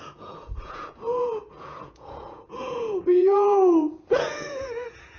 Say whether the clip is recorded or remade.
remade